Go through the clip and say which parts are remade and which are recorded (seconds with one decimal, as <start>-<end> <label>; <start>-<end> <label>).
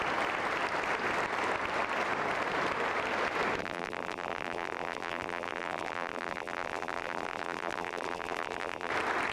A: 0.0-3.6 recorded; 3.6-8.9 remade; 8.9-9.3 recorded